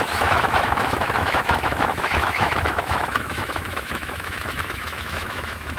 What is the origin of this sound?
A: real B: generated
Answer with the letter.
B